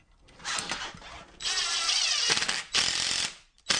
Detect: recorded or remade recorded